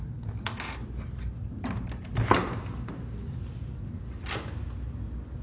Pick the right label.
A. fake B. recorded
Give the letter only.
B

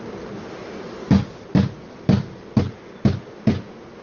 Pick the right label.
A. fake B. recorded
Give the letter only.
B